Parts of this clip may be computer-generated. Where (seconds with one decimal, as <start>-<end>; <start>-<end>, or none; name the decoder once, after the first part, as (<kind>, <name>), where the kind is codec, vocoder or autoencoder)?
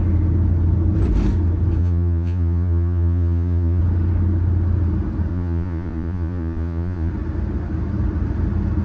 1.8-3.8 (vocoder, Vocos); 5.3-7.1